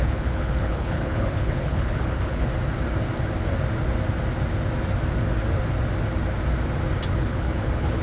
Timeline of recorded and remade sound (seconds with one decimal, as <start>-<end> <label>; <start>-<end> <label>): 0.0-2.5 remade; 2.5-7.1 recorded; 7.1-8.0 remade